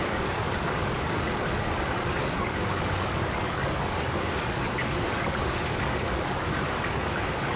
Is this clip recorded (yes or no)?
no